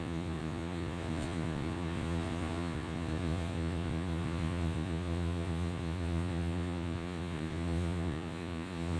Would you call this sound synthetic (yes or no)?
yes